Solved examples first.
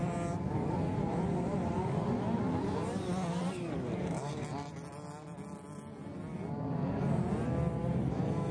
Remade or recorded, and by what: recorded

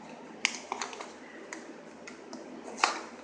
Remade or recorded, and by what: recorded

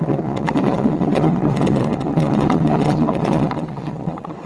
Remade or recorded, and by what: remade, vocoder, WaveNeXt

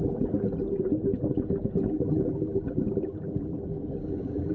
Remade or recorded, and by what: recorded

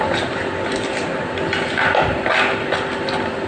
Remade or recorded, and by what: recorded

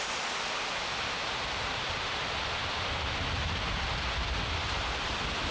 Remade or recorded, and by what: recorded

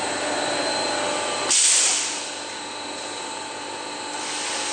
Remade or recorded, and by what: recorded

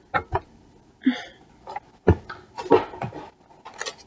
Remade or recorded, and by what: recorded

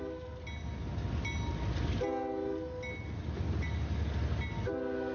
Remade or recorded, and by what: recorded